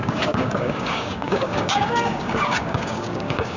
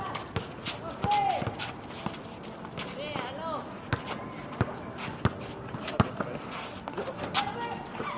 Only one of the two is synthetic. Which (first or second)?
first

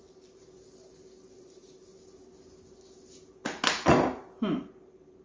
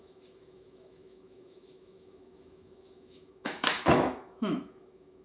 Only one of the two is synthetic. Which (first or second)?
second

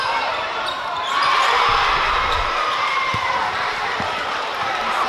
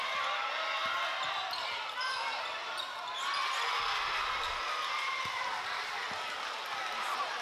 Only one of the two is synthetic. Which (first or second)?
first